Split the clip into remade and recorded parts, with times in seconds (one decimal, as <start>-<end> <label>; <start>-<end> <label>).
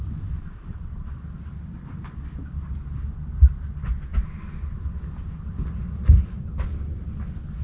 0.0-7.6 recorded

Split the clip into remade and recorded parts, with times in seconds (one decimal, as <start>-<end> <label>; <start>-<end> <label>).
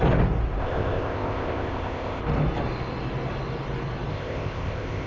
0.0-0.6 recorded; 0.6-2.2 remade; 2.2-4.1 recorded; 4.1-5.1 remade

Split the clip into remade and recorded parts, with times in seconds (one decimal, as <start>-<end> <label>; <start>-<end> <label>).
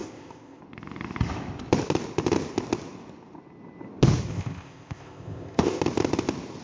0.0-0.6 remade; 0.6-4.3 recorded; 4.3-5.8 remade; 5.8-6.6 recorded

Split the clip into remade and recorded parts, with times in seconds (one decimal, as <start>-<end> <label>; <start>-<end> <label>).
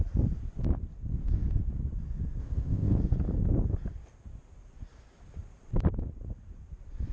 0.0-2.4 recorded; 2.4-3.0 remade; 3.0-7.1 recorded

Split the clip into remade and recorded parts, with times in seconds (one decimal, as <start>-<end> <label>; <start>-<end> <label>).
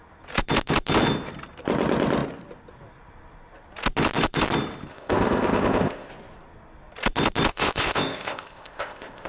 0.0-4.9 recorded; 4.9-6.1 remade; 6.1-7.5 recorded; 7.5-9.3 remade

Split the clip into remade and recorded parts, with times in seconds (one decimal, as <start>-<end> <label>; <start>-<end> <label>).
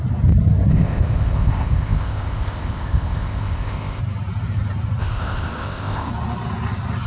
0.0-0.7 recorded; 0.7-4.0 remade; 4.0-5.0 recorded; 5.0-6.1 remade; 6.1-7.1 recorded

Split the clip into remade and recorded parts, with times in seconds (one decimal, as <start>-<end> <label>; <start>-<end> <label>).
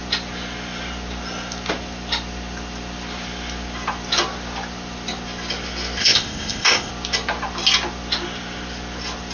0.0-6.0 recorded; 6.0-6.9 remade; 6.9-9.3 recorded